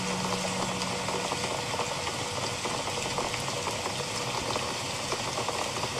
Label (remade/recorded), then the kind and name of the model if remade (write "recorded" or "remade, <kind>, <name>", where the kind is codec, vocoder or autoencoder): recorded